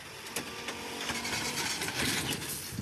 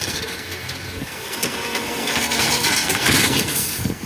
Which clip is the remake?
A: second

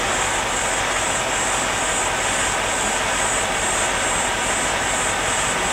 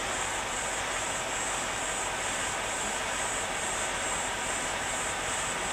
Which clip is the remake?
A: second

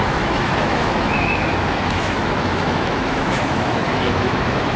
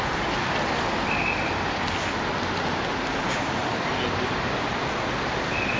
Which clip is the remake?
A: first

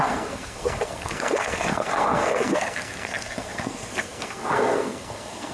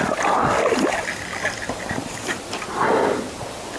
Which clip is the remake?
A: first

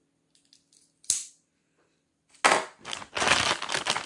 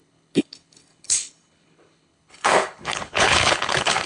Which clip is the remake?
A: second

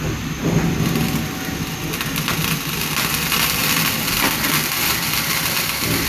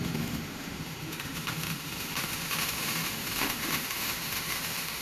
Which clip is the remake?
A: second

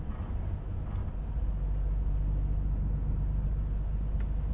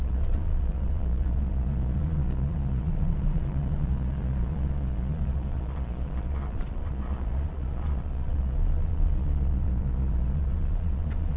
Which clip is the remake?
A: second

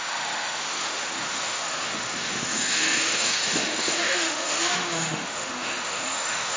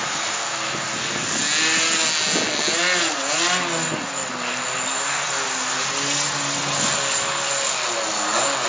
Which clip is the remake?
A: first